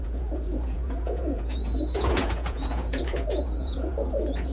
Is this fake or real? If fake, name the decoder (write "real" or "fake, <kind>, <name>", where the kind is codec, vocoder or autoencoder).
fake, vocoder, Vocos